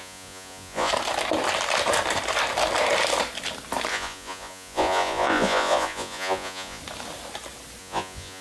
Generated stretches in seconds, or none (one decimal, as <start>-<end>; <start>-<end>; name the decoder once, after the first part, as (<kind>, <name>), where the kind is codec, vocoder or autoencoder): 0.0-0.9 (vocoder, Vocos); 3.9-6.8; 7.8-8.4